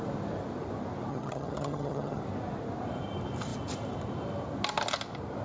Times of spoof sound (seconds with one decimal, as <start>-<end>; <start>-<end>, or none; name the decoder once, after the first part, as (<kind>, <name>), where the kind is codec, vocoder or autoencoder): 1.1-2.2 (vocoder, HiFi-GAN)